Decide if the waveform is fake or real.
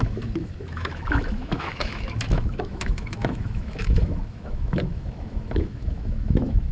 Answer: fake